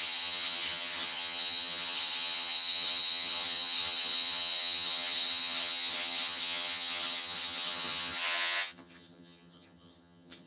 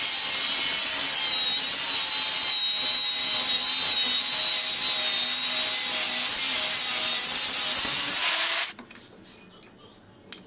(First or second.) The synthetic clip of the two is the first